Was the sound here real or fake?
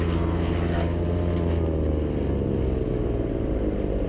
real